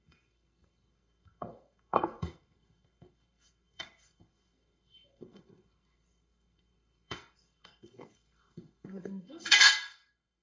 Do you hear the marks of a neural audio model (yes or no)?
yes